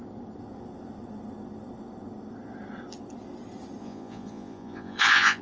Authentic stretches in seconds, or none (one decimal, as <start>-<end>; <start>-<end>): 0.0-3.8